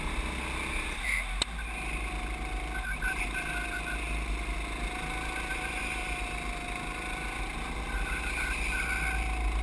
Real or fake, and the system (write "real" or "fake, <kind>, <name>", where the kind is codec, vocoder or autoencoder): real